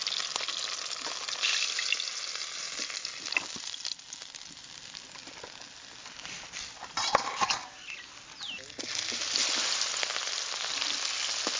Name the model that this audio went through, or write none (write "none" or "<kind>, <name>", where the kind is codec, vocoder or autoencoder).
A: none